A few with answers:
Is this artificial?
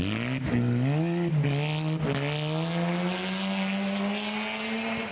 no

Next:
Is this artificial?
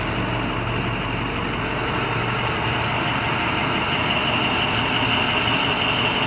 no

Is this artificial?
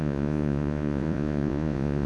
yes